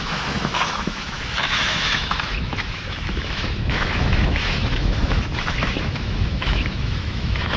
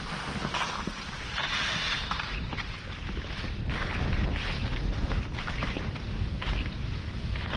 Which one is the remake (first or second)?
first